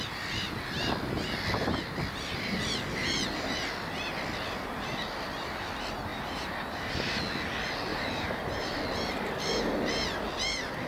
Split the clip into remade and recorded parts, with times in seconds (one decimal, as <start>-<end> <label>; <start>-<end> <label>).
0.0-6.1 recorded; 6.1-7.2 remade; 7.2-7.9 recorded; 7.9-8.8 remade; 8.8-10.9 recorded